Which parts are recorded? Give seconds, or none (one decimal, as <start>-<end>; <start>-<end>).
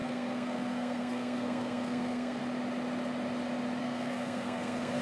2.4-3.8